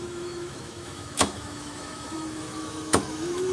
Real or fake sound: fake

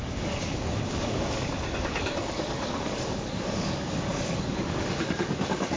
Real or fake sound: fake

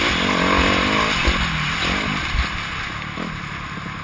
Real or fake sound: real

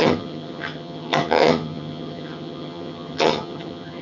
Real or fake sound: fake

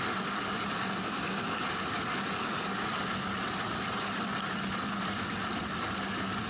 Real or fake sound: real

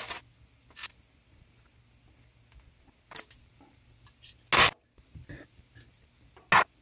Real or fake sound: real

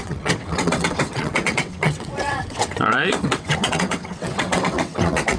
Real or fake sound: fake